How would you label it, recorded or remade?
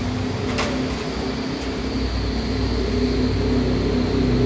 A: recorded